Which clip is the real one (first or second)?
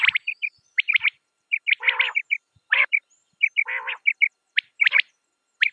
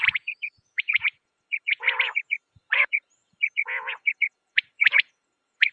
first